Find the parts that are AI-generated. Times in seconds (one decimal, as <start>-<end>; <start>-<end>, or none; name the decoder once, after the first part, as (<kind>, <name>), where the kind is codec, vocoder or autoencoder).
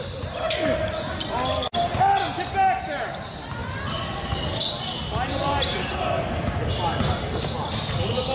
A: none